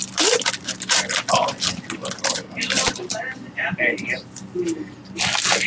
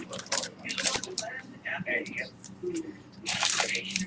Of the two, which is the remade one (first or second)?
second